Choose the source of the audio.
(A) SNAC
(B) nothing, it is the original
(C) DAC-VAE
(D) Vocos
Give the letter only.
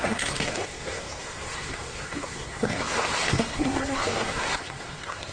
A